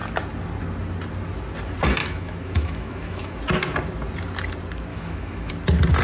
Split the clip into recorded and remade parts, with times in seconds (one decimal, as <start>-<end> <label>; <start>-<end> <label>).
0.0-2.0 recorded; 2.0-3.4 remade; 3.4-4.9 recorded; 4.9-5.5 remade; 5.5-6.0 recorded